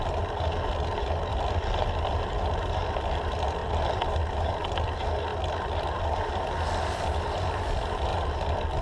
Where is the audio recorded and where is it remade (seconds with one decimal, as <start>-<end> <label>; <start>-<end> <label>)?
0.0-8.8 recorded